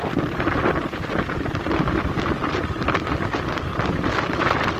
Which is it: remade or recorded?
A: remade